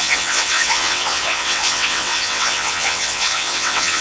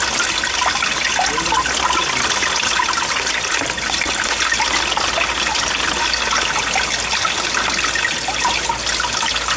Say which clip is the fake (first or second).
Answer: first